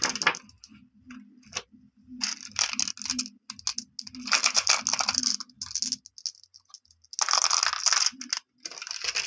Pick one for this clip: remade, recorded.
recorded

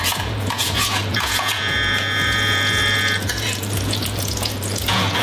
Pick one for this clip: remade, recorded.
remade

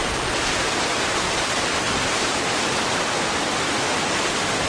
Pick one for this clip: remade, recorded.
recorded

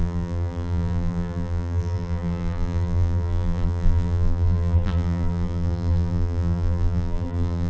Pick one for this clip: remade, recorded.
remade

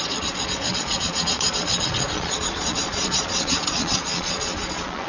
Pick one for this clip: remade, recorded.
remade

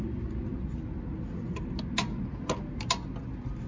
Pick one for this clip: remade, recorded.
recorded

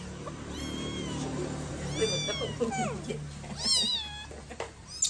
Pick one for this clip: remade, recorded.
recorded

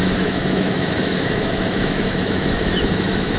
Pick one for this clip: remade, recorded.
remade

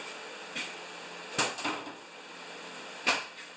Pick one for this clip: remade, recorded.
recorded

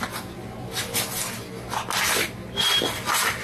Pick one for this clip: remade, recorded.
recorded